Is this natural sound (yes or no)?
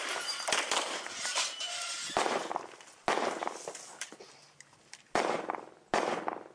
yes